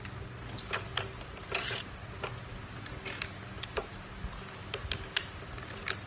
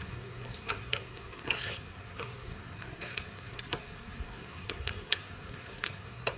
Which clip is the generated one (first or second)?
second